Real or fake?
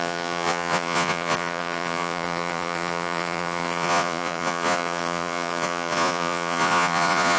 fake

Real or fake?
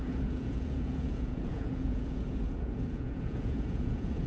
fake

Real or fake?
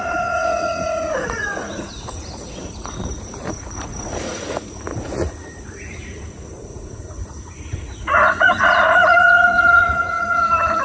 fake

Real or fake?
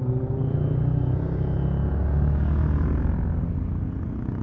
real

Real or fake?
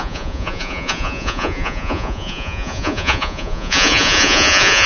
fake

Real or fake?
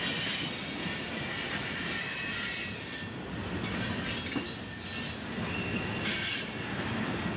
real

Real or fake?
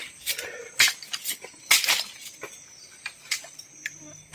real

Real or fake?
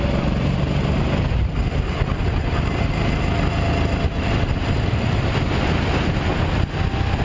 real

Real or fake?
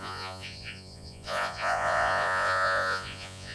fake